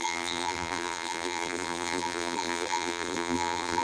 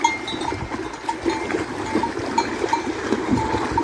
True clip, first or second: second